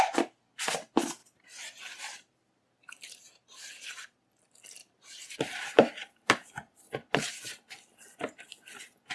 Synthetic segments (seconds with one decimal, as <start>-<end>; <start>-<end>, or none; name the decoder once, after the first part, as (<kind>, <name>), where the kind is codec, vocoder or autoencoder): 1.2-3.7 (vocoder, BigVGAN v2); 4.8-6.5